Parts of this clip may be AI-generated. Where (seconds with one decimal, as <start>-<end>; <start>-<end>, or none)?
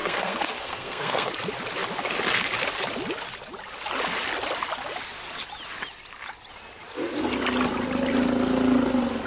0.0-1.3